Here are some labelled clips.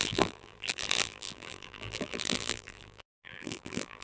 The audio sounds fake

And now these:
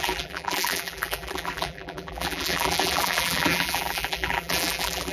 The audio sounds fake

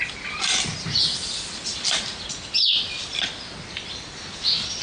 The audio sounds real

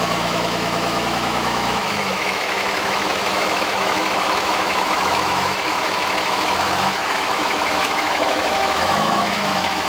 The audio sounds fake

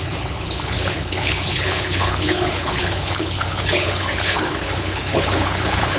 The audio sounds fake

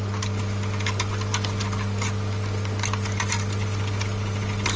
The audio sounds real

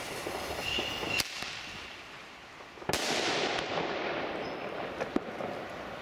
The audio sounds real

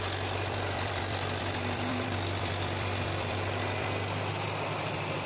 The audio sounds fake